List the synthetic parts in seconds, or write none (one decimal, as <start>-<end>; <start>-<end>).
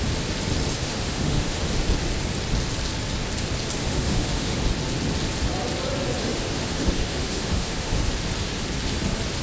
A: 0.8-1.6; 3.8-4.6; 6.2-8.1